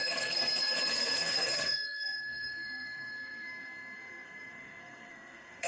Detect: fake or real fake